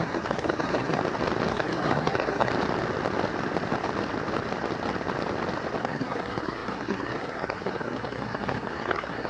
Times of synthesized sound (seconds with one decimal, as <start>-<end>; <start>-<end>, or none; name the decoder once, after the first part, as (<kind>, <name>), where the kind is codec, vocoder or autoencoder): 0.0-1.0 (codec, SNAC); 1.5-2.5; 5.8-9.3